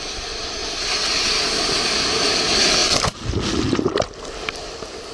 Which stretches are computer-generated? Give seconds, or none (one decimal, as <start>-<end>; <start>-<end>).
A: none